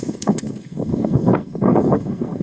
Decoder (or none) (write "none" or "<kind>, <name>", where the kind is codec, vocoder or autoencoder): codec, SNAC